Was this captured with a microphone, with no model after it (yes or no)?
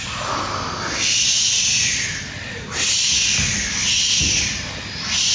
yes